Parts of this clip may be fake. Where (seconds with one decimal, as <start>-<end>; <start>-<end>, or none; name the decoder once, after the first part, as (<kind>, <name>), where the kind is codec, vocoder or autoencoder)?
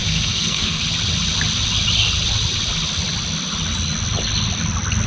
0.0-0.8 (codec, SNAC)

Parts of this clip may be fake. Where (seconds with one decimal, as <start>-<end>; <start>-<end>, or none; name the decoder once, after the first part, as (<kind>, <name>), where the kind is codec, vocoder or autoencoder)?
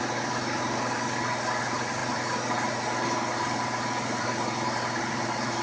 none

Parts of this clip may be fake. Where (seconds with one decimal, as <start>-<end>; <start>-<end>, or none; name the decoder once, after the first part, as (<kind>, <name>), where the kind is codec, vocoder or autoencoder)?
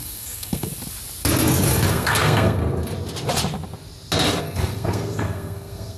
0.0-0.7 (codec, SNAC); 1.9-2.6; 4.4-6.0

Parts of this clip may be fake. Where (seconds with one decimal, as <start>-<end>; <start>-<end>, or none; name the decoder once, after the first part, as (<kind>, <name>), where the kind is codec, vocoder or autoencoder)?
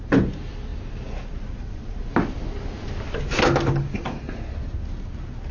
none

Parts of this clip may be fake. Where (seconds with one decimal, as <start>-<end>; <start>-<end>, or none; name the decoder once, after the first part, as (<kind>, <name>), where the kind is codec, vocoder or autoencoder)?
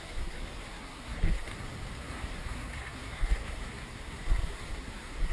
0.0-1.5 (codec, SNAC); 2.0-5.3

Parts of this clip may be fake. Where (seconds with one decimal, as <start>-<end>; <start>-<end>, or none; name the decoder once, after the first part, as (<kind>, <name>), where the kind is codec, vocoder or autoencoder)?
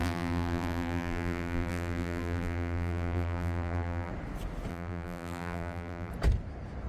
0.0-4.1 (vocoder, BigVGAN v2); 4.7-6.1